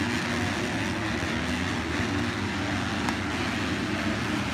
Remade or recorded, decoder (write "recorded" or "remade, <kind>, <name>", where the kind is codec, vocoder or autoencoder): recorded